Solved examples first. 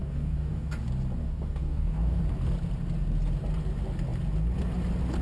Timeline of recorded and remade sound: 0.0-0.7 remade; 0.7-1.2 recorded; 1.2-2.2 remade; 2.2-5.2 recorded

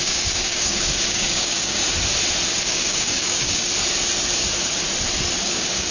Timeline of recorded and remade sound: 0.0-1.8 remade; 1.8-2.6 recorded; 2.6-3.7 remade; 3.7-5.4 recorded; 5.4-5.9 remade